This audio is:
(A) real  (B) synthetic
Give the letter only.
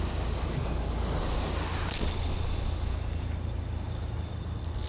A